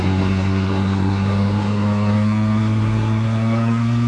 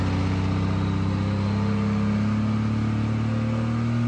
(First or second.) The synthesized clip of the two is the first